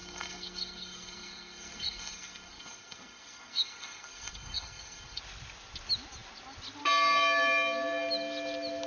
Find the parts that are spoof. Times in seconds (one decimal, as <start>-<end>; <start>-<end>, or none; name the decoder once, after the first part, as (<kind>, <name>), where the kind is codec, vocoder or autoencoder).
0.0-5.2 (codec, SNAC)